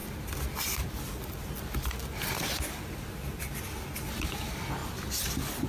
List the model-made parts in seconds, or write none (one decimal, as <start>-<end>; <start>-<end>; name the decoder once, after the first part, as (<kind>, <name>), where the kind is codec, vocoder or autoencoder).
none